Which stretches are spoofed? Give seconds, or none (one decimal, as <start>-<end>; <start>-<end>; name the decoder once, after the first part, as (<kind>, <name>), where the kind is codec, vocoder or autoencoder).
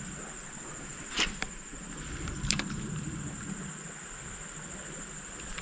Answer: 0.4-1.1 (vocoder, Vocos)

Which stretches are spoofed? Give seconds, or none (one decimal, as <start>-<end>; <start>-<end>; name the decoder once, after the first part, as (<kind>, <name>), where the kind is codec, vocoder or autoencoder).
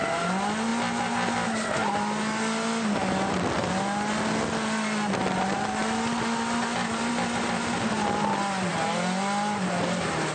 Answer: none